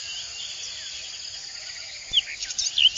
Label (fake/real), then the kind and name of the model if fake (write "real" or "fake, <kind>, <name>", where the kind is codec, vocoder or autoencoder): real